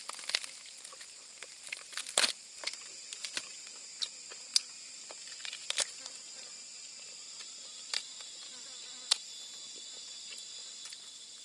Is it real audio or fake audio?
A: real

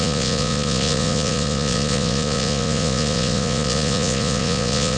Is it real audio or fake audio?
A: fake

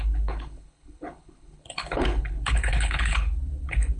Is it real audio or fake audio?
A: fake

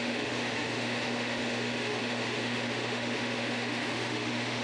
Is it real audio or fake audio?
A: fake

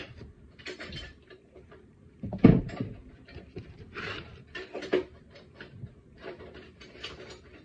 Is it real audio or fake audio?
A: fake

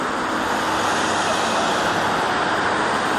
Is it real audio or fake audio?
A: real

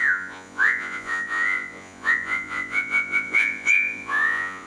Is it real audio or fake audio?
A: fake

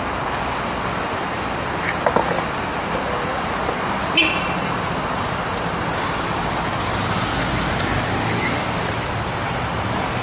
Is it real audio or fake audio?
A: real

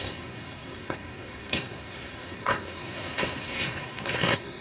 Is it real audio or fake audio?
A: fake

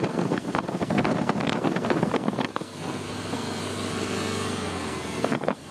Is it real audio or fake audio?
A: fake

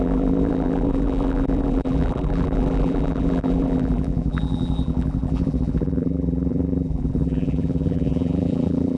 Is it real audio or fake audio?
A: fake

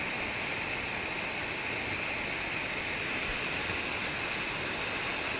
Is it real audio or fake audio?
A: real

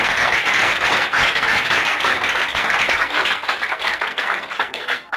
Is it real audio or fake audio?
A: fake